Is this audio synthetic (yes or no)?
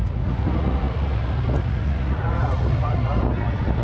yes